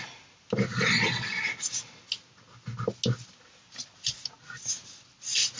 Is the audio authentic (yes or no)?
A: yes